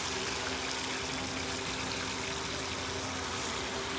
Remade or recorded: recorded